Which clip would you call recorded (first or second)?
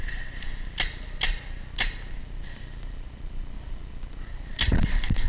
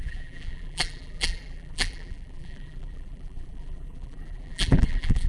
first